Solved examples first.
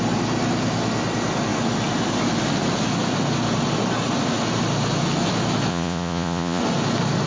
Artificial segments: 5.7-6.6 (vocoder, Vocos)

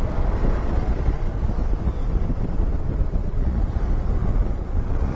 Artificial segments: 3.2-3.8 (vocoder, Vocos); 4.2-5.2

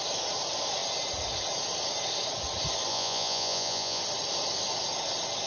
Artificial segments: 2.9-4.0 (vocoder, Vocos)